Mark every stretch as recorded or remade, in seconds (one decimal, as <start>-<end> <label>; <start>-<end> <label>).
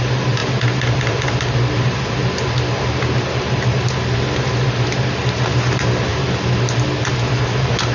0.0-7.9 recorded